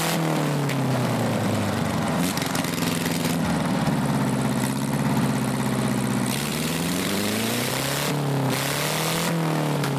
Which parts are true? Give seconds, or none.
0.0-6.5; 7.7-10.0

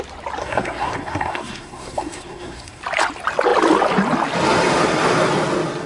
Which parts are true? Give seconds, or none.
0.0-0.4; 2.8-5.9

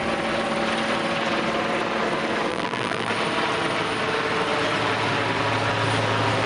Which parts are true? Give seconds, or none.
0.0-2.5; 3.1-6.5